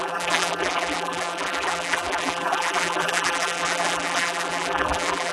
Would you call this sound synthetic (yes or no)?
yes